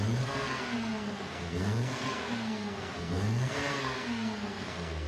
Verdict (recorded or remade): remade